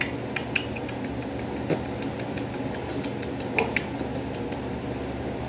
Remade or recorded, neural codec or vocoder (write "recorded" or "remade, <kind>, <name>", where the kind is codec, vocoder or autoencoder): recorded